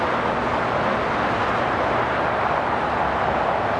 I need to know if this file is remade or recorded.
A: recorded